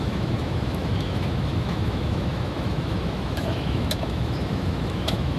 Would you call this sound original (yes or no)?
no